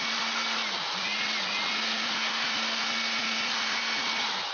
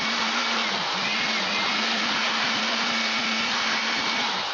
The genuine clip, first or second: first